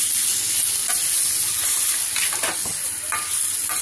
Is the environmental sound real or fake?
real